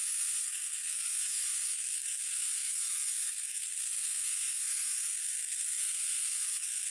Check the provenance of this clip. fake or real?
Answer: fake